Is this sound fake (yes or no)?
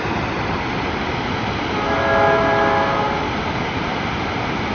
no